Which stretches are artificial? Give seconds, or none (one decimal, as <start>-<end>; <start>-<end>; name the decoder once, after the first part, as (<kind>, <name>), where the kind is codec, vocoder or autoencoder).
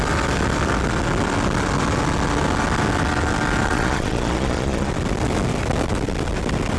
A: 3.7-4.9 (vocoder, Vocos)